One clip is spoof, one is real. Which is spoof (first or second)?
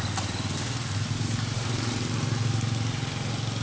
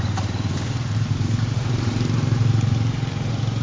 second